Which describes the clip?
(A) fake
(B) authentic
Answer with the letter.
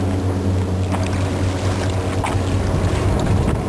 B